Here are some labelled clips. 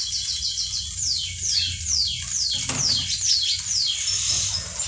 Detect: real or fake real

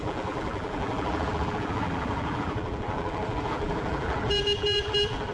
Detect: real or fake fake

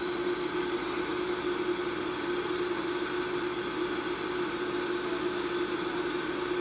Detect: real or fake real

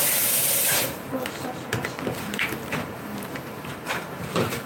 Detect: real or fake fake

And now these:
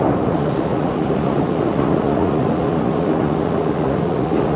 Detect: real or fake fake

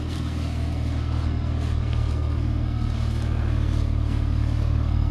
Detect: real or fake fake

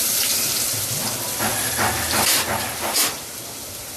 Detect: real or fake real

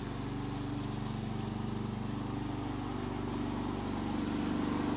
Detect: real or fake real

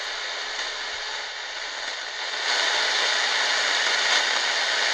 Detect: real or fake real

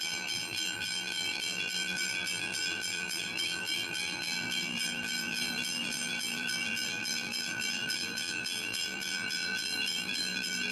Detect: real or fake fake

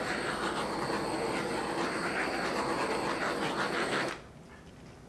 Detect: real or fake real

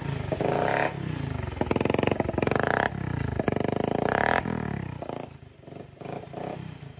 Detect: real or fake real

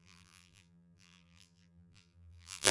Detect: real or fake fake